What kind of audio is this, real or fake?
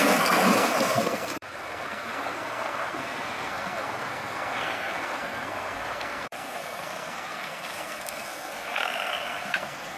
fake